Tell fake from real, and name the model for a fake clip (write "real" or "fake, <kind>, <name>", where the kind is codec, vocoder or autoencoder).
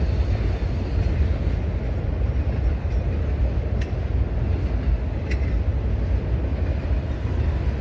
real